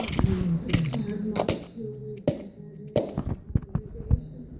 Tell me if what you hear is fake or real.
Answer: real